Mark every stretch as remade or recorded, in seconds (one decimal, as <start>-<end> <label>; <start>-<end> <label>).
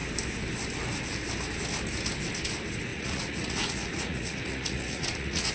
0.0-2.9 recorded; 2.9-5.5 remade